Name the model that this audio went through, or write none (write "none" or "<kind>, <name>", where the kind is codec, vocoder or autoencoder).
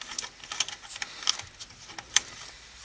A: none